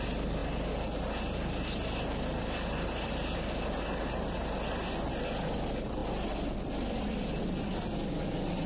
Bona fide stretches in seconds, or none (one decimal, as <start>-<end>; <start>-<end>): 0.0-6.0; 7.4-8.7